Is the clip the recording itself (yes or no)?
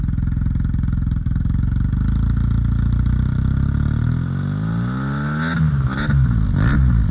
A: yes